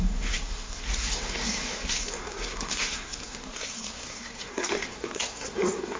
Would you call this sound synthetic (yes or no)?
yes